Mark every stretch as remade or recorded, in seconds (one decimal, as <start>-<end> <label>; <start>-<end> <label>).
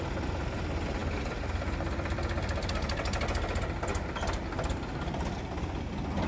0.0-6.3 recorded